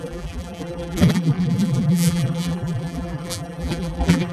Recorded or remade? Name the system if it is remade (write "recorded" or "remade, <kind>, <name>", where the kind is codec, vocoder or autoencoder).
remade, vocoder, BigVGAN v2